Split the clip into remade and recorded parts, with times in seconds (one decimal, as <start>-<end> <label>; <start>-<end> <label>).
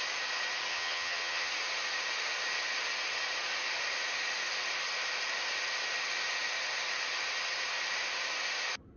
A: 0.0-0.7 recorded; 0.7-1.5 remade; 1.5-9.0 recorded